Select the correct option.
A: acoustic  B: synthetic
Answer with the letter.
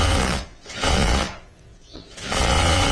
B